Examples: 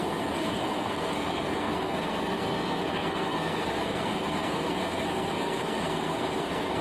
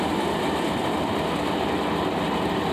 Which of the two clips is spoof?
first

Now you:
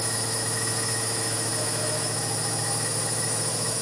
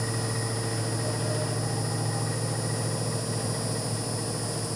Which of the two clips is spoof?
first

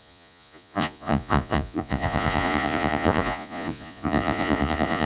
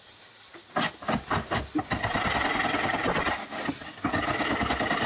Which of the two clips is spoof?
first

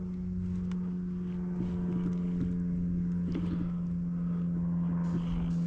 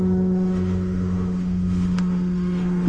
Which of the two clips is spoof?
second